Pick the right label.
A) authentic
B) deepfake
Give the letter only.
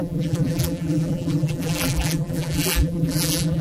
B